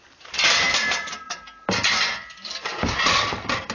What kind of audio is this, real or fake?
real